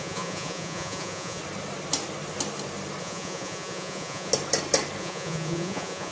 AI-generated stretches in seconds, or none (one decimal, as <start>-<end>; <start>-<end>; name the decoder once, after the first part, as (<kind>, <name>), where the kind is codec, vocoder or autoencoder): 0.0-1.4 (vocoder, Vocos); 3.0-4.3; 5.0-6.1